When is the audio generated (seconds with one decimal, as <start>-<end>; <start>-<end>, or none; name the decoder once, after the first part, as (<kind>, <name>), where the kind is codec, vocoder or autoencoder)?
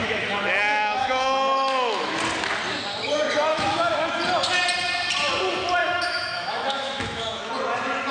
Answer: 0.0-2.2 (autoencoder, DAC-VAE); 3.5-4.2; 5.8-7.5